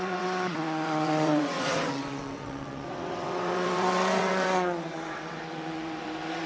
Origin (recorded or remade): remade